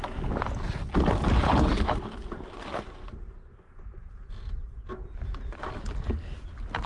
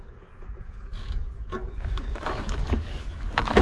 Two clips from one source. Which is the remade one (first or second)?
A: second